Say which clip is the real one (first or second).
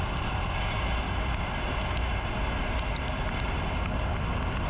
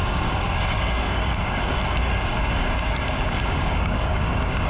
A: first